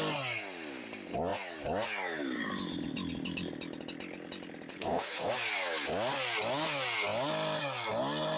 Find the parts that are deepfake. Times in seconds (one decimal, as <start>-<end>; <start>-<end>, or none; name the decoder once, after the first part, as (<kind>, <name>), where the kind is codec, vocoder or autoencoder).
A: 4.7-5.3 (codec, HILCodec)